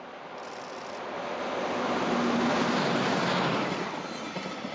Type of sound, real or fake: real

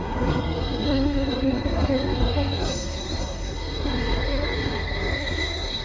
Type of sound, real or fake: fake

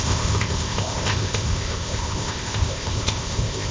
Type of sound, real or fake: fake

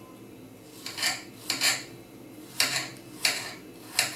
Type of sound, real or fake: real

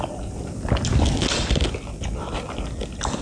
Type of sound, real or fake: real